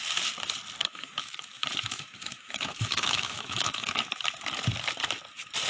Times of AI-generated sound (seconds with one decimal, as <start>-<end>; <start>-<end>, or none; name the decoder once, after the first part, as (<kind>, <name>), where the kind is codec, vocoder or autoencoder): 0.8-4.2 (autoencoder, DAC-VAE)